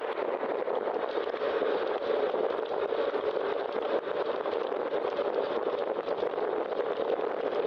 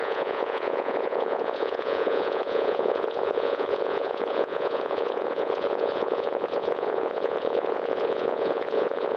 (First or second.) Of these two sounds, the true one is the first